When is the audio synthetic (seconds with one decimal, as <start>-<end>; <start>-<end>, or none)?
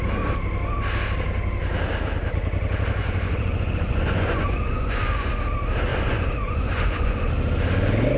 3.0-5.3; 5.9-7.3